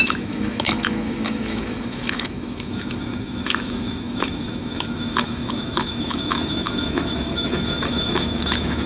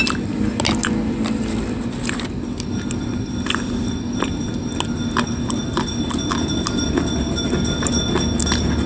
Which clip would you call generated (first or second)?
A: first